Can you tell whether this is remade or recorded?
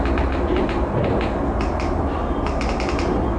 recorded